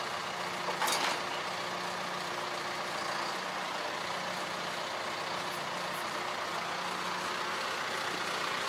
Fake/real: real